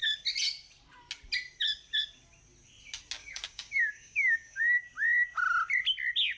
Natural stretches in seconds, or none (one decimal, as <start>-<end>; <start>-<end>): 0.0-3.2; 4.6-6.4

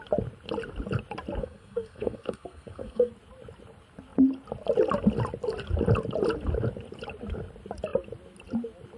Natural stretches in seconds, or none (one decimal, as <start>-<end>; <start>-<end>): 0.0-1.4; 3.1-9.0

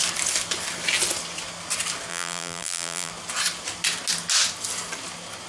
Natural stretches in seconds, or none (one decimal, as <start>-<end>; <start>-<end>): 0.0-2.1; 3.1-5.5

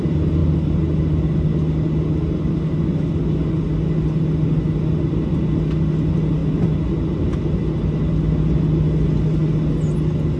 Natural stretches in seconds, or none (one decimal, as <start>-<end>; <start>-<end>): 0.0-10.4

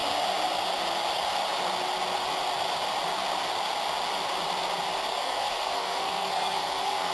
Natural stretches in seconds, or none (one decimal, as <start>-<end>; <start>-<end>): 0.0-5.1

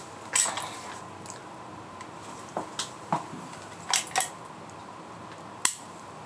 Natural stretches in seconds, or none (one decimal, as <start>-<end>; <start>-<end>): 0.0-6.3